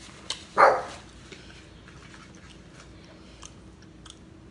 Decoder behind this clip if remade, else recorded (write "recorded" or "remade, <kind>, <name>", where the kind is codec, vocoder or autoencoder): recorded